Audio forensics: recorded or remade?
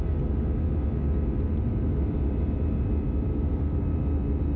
recorded